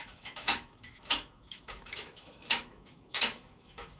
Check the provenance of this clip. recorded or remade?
remade